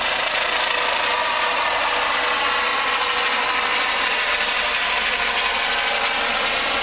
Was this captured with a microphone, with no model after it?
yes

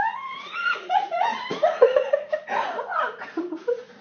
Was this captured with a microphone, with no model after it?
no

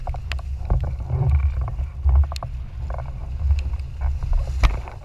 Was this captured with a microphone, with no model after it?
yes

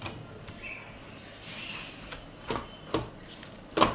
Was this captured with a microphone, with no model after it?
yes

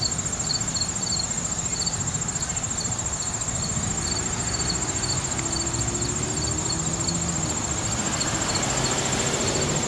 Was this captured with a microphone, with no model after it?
yes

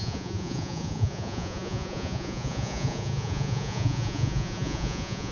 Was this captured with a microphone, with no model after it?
no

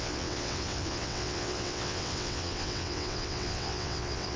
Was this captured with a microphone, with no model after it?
no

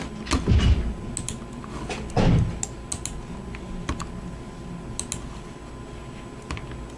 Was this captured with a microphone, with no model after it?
yes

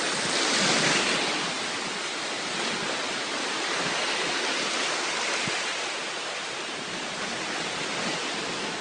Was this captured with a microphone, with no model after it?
yes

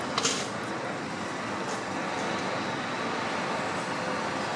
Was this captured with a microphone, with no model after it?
yes